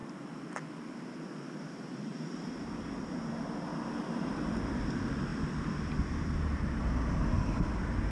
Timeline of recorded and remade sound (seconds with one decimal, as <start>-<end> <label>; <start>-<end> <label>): 0.0-2.1 recorded; 2.1-3.2 remade; 3.2-8.1 recorded